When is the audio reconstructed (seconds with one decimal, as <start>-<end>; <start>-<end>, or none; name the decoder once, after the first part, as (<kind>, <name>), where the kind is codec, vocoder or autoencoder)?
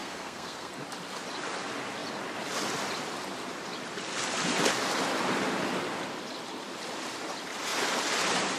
0.0-0.7 (codec, SNAC)